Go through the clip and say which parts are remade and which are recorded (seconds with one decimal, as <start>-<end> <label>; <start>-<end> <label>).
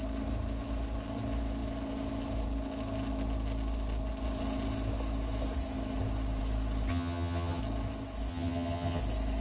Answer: 0.0-6.9 recorded; 6.9-7.6 remade; 7.6-8.3 recorded; 8.3-9.0 remade; 9.0-9.4 recorded